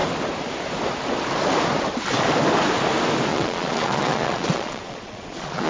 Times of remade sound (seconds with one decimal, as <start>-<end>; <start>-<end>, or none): 3.3-5.7